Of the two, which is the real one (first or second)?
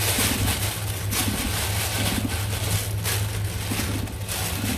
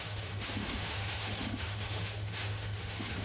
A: first